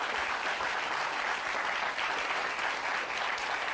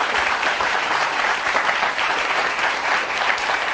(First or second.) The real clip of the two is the first